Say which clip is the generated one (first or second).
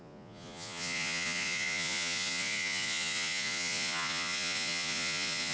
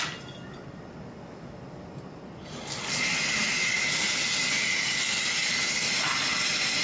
first